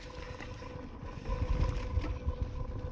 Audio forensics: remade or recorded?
recorded